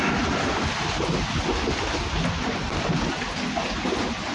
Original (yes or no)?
yes